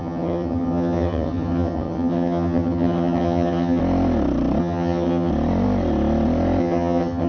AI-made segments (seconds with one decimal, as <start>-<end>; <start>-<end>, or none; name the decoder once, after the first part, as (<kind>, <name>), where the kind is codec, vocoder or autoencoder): 0.0-3.8 (vocoder, HiFi-GAN); 4.6-5.3; 6.6-7.3